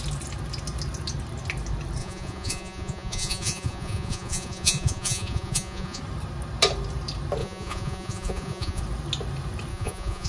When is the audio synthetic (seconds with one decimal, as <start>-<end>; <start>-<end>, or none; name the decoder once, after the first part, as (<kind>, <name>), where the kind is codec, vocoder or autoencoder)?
2.0-6.0 (vocoder, Vocos); 7.4-8.8; 9.7-10.3